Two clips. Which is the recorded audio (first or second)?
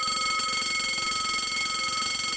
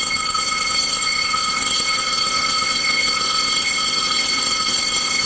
first